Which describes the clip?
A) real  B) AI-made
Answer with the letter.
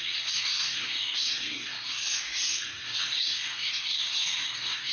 B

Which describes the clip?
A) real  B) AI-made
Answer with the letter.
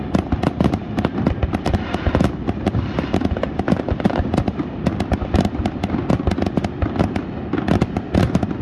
A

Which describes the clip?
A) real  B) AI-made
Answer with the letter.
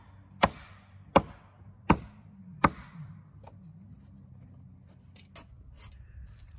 A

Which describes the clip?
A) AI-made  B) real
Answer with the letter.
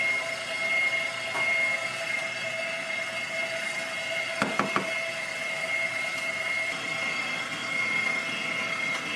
B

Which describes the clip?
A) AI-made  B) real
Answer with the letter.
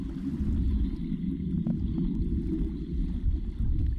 B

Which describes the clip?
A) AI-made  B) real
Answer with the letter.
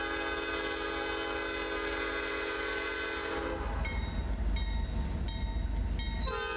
B